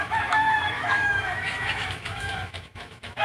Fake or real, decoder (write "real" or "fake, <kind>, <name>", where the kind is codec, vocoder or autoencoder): fake, autoencoder, DAC-VAE